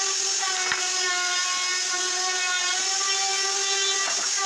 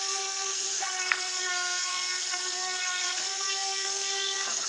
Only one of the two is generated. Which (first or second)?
second